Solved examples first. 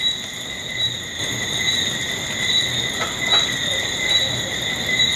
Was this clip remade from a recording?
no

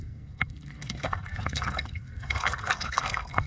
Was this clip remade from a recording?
yes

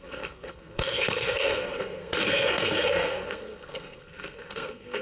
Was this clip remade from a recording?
yes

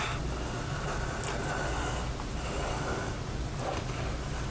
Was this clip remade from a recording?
no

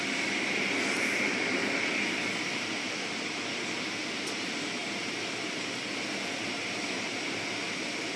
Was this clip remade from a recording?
no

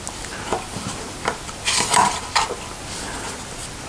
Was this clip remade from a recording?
no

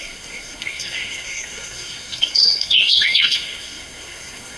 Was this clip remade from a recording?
yes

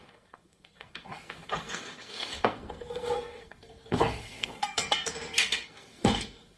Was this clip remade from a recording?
yes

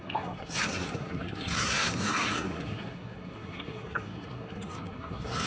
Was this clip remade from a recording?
yes